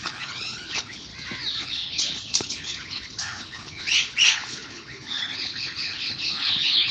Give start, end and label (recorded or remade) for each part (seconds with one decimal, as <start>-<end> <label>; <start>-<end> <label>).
0.0-1.1 remade; 1.1-1.6 recorded; 1.6-6.9 remade